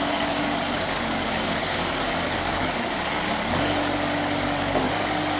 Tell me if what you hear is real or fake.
fake